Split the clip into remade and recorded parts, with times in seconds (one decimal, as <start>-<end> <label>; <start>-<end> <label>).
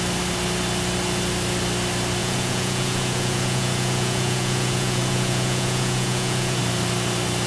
0.0-2.2 recorded; 2.2-6.6 remade; 6.6-7.5 recorded